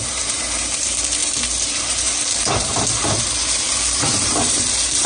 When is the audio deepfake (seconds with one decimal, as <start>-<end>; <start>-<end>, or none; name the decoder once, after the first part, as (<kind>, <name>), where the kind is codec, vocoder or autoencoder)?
0.0-5.1 (vocoder, BigVGAN v2)